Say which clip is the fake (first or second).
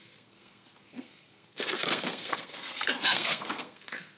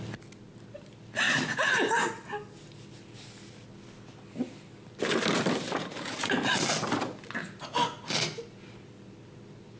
first